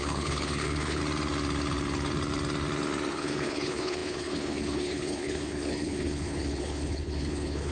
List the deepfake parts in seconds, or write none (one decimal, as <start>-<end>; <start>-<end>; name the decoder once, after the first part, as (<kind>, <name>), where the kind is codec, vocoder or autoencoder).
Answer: 0.0-1.0 (codec, HILCodec); 3.1-7.7